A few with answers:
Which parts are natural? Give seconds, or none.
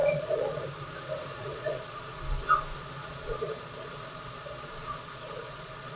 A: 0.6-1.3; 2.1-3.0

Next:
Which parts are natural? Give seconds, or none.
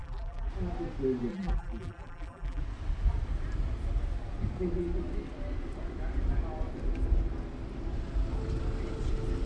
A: 0.5-1.3; 2.6-9.5